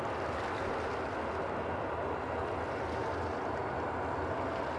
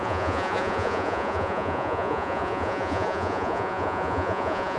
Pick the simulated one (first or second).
second